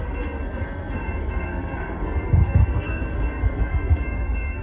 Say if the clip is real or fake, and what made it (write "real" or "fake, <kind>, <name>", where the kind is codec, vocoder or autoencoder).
fake, codec, SNAC